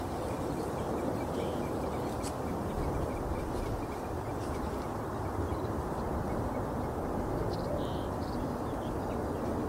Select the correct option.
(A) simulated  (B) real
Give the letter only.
A